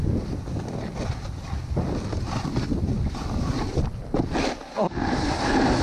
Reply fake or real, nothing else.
real